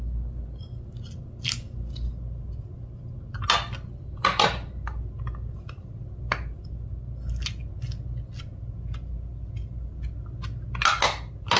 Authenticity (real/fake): real